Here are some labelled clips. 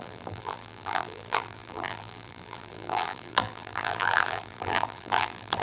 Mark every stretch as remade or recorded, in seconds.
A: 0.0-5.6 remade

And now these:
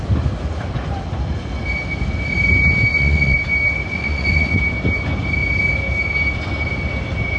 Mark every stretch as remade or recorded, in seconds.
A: 0.0-2.9 recorded; 2.9-3.4 remade; 3.4-3.9 recorded; 3.9-4.6 remade; 4.6-7.4 recorded

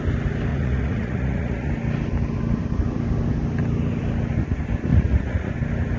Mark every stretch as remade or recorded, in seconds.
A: 0.0-0.5 recorded; 0.5-1.7 remade; 1.7-4.9 recorded; 4.9-5.5 remade; 5.5-6.0 recorded

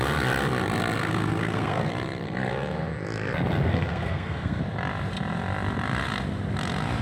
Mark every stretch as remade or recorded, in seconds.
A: 0.0-1.0 recorded; 1.0-1.9 remade; 1.9-3.7 recorded; 3.7-4.6 remade; 4.6-7.0 recorded

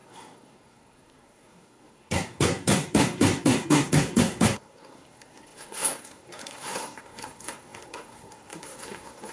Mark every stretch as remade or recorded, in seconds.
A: 0.0-9.3 remade

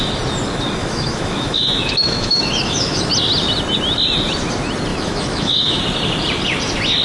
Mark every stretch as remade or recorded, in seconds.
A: 0.0-0.8 recorded; 0.8-3.1 remade; 3.1-4.9 recorded; 4.9-5.8 remade; 5.8-7.0 recorded